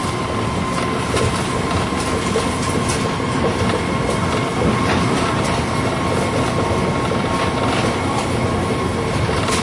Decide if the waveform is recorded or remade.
recorded